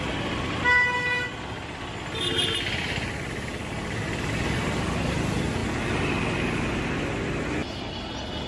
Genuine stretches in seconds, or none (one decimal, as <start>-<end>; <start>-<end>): 0.0-8.5